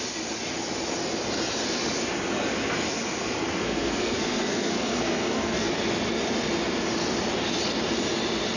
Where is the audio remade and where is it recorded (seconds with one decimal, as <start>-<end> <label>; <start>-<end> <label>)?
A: 0.0-3.5 recorded; 3.5-5.7 remade; 5.7-8.6 recorded